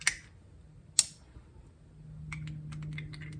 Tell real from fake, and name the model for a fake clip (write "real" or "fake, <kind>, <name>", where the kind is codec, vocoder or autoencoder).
real